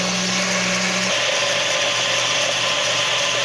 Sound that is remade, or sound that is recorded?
recorded